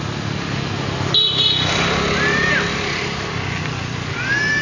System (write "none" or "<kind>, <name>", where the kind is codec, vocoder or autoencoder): none